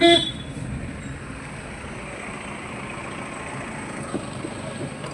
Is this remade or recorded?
recorded